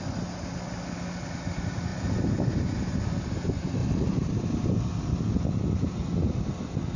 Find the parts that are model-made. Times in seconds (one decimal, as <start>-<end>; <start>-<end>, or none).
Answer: 1.9-2.6; 3.8-4.7